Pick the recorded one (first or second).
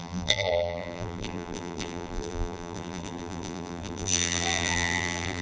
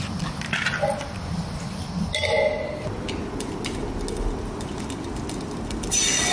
second